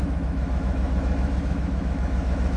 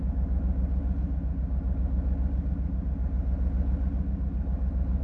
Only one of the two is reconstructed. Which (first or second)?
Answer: first